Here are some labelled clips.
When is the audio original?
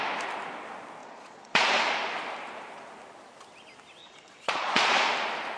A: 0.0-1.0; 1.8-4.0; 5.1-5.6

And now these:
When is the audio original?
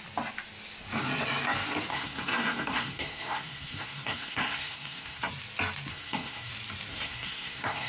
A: 0.0-1.9; 5.3-5.9; 6.5-6.9